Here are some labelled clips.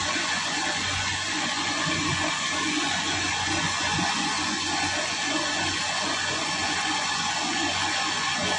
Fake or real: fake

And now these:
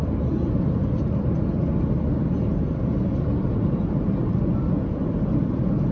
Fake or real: real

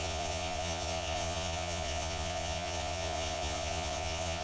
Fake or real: fake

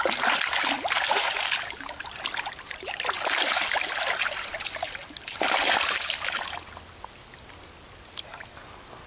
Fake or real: real